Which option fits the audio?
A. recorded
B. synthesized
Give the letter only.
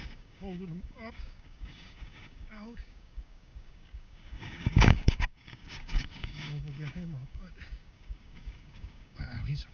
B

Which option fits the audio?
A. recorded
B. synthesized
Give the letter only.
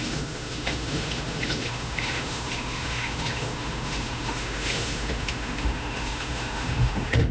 B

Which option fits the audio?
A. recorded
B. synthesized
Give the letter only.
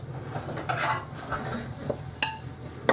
A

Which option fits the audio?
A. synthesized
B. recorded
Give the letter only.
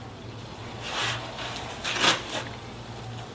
B